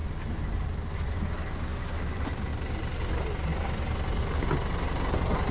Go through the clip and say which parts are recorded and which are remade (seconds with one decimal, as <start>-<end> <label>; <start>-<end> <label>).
0.0-5.5 recorded